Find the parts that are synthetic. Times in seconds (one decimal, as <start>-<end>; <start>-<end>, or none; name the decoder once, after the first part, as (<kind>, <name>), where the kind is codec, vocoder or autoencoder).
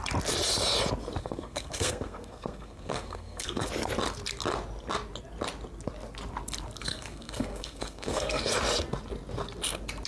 1.2-3.7 (codec, SNAC); 6.9-8.4